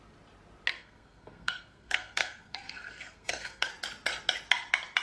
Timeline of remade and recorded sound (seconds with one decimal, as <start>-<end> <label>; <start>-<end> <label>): 0.0-0.7 recorded; 0.7-3.7 remade; 3.7-5.0 recorded